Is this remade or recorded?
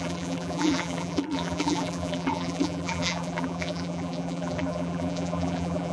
remade